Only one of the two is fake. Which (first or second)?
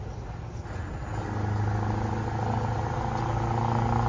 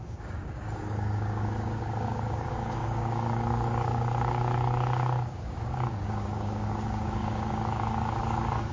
second